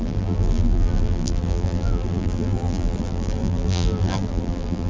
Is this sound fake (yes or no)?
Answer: yes